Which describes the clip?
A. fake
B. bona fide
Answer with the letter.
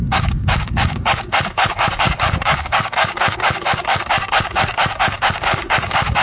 A